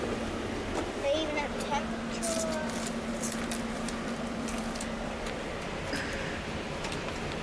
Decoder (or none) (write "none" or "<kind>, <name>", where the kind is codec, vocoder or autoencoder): none